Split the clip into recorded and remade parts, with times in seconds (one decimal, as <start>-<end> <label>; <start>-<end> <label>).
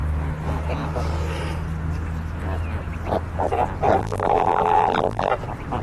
0.0-4.0 recorded; 4.0-5.3 remade; 5.3-5.8 recorded